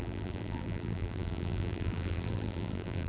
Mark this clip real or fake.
fake